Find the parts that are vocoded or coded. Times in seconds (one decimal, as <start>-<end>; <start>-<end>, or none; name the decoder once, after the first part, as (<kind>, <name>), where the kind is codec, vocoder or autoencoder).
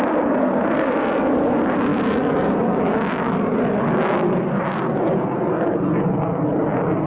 0.4-0.9 (codec, SNAC)